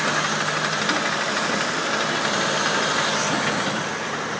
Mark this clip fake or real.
real